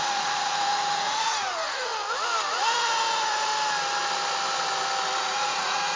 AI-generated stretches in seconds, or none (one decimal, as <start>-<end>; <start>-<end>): 0.0-1.9; 2.5-3.5; 5.2-6.0